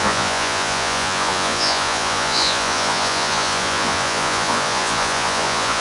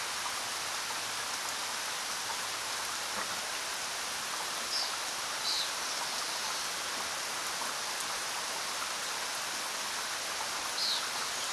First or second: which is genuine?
second